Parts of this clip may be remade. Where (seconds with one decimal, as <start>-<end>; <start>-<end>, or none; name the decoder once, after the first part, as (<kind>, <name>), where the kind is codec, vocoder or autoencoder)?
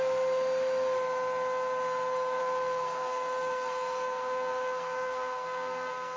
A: 2.4-6.2 (codec, SNAC)